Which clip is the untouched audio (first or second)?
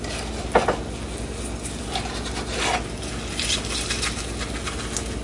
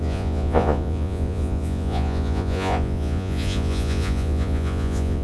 first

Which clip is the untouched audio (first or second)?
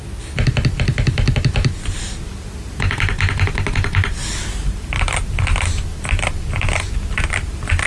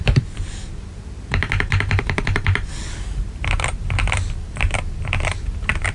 first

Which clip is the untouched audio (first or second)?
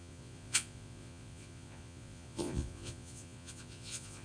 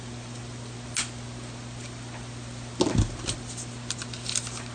second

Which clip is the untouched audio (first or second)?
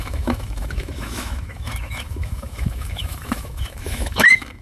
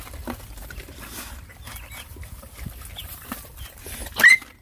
second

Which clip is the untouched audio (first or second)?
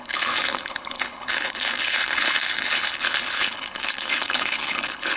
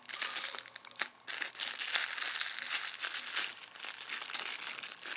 second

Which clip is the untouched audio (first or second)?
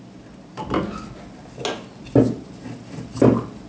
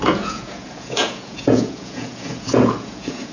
first